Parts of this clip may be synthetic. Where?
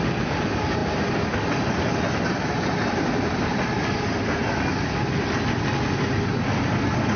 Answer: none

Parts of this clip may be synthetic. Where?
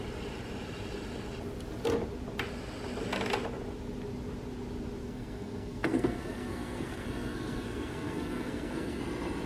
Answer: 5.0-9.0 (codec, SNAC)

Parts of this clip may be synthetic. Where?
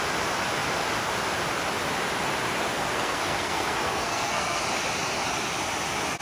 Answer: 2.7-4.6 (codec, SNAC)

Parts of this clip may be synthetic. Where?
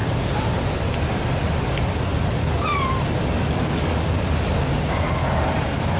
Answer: none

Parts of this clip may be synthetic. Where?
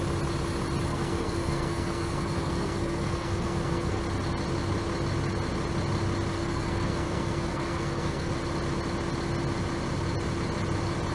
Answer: 0.9-4.0 (codec, SNAC); 6.3-8.3